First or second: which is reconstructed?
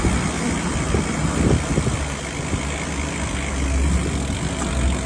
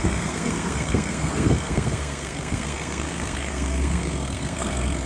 second